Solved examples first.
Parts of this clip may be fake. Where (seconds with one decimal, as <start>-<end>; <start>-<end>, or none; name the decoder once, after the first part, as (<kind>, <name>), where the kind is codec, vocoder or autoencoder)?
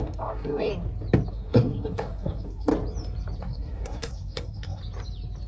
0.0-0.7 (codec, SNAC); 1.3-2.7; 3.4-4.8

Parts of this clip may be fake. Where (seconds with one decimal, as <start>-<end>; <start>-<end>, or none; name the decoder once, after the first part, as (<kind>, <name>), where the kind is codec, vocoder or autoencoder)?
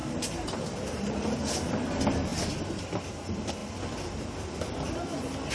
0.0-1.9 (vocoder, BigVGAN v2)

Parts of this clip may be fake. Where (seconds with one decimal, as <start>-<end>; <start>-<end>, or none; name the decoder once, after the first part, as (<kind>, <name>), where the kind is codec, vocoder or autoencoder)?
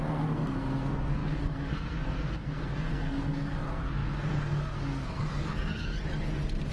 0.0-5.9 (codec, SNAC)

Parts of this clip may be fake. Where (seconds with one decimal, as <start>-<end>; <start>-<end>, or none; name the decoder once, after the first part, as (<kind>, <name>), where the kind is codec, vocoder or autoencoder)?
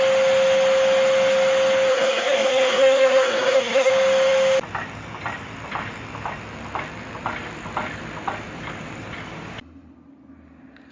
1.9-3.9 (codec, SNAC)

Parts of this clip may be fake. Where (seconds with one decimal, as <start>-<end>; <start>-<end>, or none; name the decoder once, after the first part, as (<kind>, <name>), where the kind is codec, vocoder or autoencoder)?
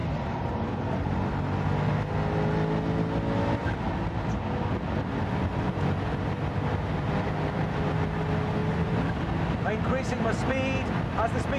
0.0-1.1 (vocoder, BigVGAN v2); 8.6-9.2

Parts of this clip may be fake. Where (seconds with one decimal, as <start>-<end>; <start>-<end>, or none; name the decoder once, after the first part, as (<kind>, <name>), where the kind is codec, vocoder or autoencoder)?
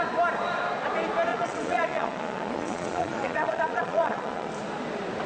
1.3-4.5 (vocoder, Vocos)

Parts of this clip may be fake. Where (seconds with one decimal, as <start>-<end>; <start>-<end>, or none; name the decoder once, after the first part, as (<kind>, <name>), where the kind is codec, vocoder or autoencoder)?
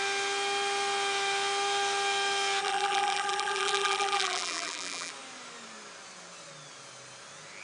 2.6-5.1 (vocoder, BigVGAN v2)